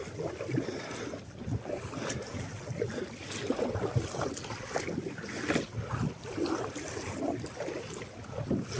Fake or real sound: real